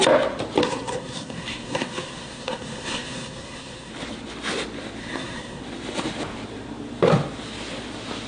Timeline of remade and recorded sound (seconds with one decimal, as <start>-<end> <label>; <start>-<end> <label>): 0.0-0.6 recorded; 0.6-3.9 remade; 3.9-5.0 recorded; 5.0-5.6 remade; 5.6-8.3 recorded